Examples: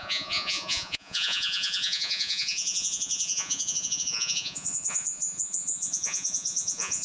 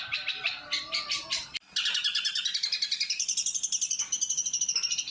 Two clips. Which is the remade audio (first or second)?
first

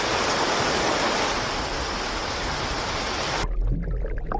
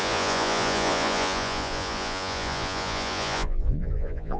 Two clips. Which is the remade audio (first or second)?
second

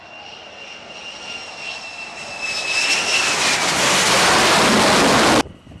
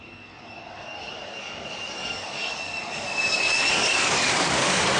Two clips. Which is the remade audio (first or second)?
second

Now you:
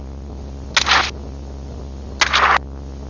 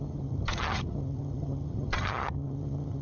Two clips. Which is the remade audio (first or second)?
second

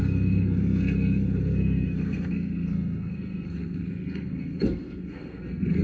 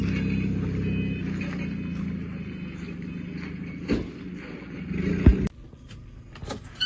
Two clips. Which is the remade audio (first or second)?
first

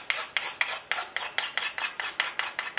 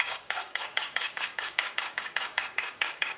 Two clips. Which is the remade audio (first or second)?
second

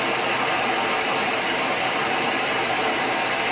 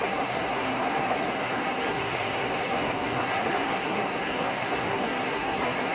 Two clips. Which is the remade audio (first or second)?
second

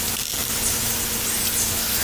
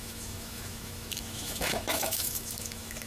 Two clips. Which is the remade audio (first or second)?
second